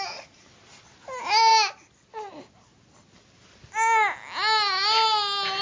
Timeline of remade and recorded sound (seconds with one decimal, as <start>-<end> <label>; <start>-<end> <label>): 0.0-5.6 recorded